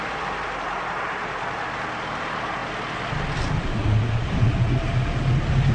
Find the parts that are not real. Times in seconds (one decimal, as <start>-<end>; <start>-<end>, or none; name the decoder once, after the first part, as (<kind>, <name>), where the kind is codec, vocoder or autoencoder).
none